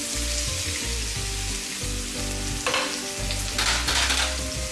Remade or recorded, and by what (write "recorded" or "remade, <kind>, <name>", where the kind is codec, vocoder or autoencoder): recorded